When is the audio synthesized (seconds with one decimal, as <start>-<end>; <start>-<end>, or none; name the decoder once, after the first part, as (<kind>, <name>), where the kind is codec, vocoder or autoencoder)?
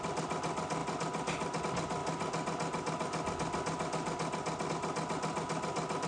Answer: none